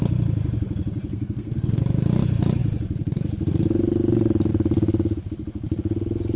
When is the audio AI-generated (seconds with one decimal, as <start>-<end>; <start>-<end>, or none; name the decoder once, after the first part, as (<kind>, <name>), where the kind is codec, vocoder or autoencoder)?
1.1-1.8 (codec, SNAC)